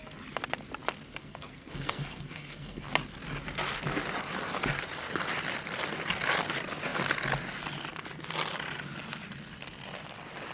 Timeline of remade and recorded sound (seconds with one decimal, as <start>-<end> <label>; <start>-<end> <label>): 0.0-1.2 recorded; 1.2-2.9 remade; 2.9-10.5 recorded